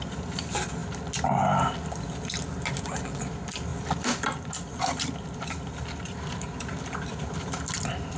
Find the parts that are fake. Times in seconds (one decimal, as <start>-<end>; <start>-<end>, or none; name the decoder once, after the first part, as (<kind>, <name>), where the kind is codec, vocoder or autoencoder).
0.0-0.8 (vocoder, BigVGAN v2); 3.0-8.2